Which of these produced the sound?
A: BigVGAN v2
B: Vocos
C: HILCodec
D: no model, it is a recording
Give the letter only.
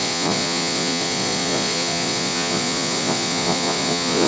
B